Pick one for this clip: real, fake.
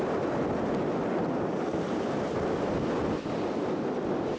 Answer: real